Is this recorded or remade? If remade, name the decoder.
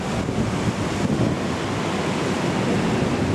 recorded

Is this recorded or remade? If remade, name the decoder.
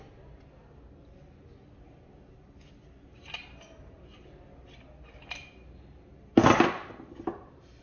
recorded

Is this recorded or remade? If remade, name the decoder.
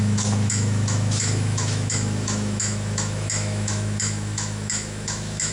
remade, autoencoder, DAC-VAE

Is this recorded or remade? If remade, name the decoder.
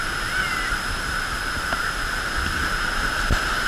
recorded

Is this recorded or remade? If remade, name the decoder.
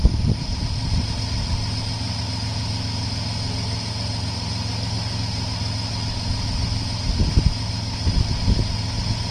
recorded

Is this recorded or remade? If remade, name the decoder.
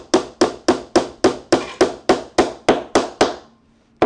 recorded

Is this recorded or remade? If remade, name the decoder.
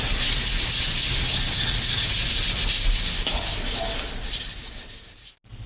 recorded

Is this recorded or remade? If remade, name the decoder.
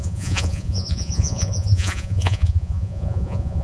remade, vocoder, Vocos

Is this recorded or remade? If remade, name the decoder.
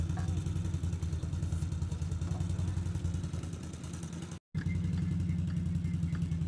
recorded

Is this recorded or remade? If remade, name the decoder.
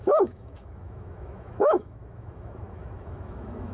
remade, autoencoder, DAC-VAE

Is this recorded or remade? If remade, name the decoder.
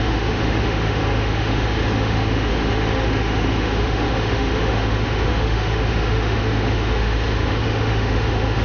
remade, autoencoder, DAC-VAE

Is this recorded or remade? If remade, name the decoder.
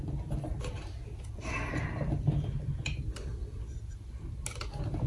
recorded